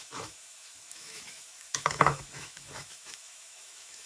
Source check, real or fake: fake